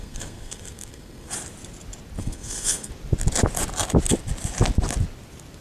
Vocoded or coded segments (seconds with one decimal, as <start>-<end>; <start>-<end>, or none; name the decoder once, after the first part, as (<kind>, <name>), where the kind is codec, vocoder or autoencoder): 0.0-1.3 (codec, SNAC); 2.2-2.9